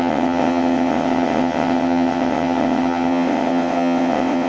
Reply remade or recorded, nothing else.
remade